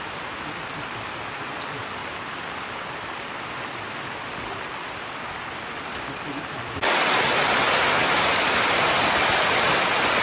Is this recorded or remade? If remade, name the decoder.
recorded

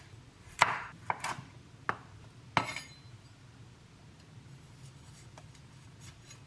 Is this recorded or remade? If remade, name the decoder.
recorded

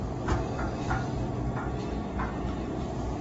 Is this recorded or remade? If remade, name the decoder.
remade, vocoder, BigVGAN v2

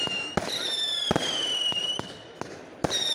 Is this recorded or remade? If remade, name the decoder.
recorded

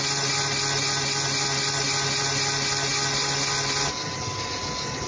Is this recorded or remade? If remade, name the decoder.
recorded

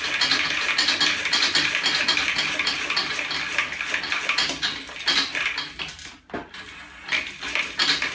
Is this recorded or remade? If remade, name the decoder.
recorded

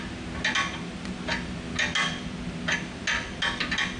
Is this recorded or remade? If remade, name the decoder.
recorded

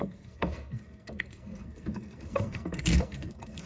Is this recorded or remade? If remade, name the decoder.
remade, codec, SNAC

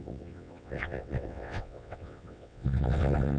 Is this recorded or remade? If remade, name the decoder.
remade, vocoder, WaveNeXt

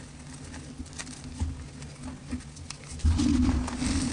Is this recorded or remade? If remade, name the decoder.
recorded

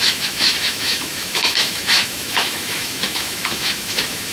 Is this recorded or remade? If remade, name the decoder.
remade, autoencoder, DAC-VAE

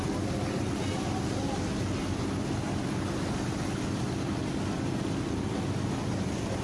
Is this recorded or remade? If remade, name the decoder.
recorded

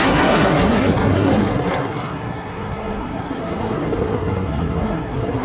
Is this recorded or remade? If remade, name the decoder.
remade, codec, SNAC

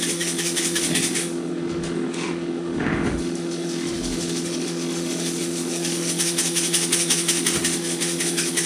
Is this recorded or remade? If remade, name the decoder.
remade, autoencoder, DAC-VAE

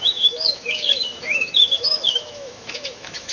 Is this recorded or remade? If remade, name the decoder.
remade, autoencoder, DAC-VAE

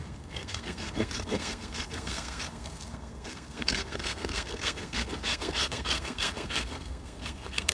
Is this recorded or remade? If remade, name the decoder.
remade, codec, SNAC